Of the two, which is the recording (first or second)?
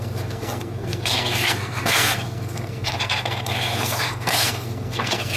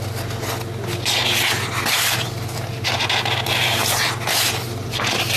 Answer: second